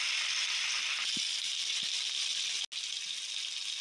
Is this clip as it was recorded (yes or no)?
yes